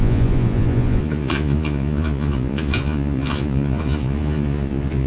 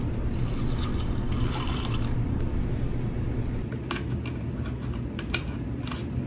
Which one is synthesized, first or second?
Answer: first